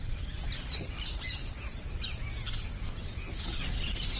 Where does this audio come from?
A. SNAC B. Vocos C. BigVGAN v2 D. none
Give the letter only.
D